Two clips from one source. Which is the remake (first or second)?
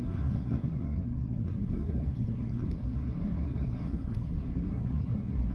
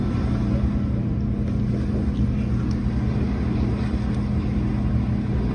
first